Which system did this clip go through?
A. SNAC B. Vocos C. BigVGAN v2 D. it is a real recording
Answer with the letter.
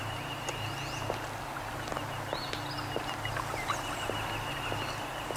D